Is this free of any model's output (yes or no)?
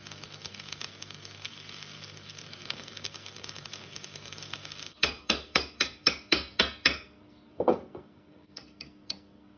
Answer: no